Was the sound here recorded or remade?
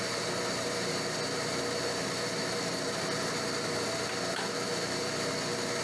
recorded